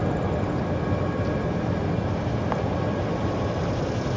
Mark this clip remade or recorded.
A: recorded